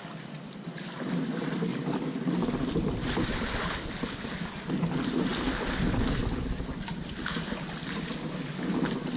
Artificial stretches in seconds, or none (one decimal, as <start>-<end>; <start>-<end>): 1.7-2.5; 5.3-6.6